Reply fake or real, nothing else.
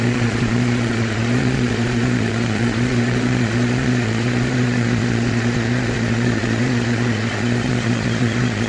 fake